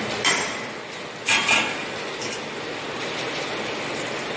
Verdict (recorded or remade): recorded